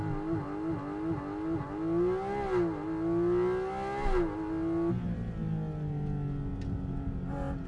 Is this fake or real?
real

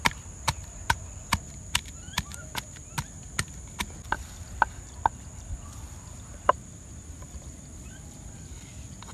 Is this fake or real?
real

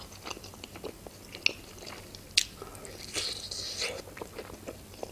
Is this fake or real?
real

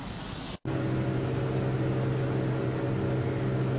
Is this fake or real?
real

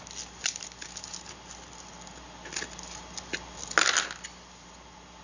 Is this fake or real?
real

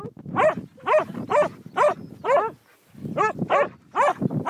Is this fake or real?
real